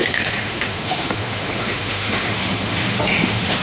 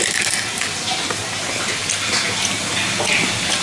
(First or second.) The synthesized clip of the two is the first